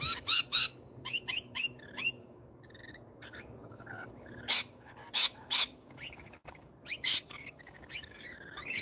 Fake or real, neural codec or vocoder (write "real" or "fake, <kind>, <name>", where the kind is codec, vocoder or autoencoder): fake, codec, DAC